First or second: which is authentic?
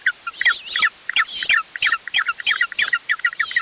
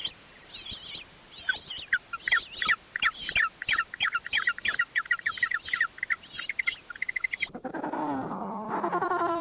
first